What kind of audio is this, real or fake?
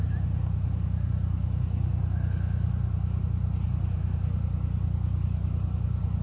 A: real